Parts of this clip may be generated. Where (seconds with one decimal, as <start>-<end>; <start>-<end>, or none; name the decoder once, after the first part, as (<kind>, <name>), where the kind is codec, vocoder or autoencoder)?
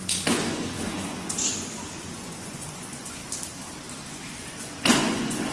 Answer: 0.0-3.2 (vocoder, Vocos); 4.1-5.5